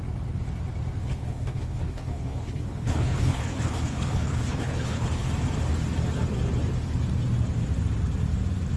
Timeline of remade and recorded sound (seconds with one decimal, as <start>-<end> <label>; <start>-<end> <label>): 0.0-1.0 recorded; 1.0-5.3 remade; 5.3-8.8 recorded